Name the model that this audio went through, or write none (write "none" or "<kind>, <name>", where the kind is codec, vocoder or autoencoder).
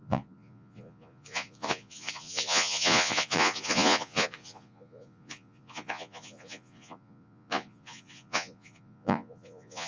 vocoder, Vocos